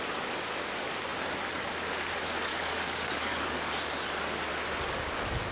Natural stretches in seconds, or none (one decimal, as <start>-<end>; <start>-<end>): 0.0-2.5; 3.9-5.5